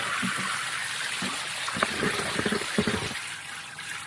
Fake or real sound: real